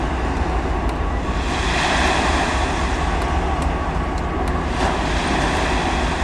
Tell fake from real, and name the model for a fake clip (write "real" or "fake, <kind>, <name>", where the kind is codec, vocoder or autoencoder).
real